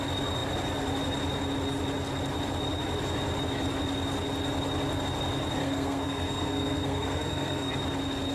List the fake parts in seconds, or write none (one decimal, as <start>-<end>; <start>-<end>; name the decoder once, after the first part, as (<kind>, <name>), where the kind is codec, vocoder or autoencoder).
5.6-7.7 (codec, SNAC)